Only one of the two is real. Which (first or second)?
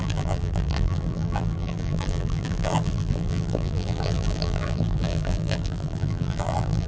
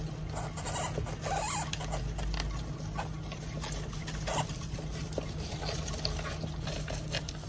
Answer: second